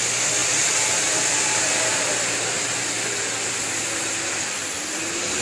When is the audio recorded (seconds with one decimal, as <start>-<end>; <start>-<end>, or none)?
0.0-0.4; 1.6-5.4